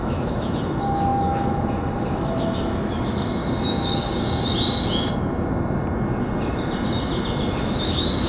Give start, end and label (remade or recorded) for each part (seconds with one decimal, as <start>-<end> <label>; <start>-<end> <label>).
0.0-3.4 remade; 3.4-7.6 recorded; 7.6-8.3 remade